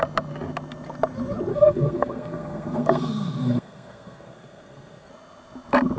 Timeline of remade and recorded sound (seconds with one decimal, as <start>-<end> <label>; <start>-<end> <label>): 0.0-1.5 recorded; 1.5-5.1 remade; 5.1-6.0 recorded